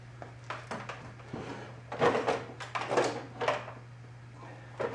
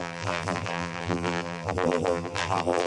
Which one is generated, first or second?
second